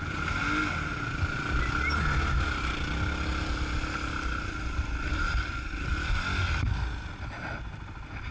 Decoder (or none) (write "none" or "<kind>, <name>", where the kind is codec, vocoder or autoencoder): none